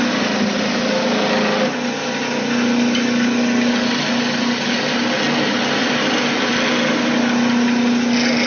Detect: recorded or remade recorded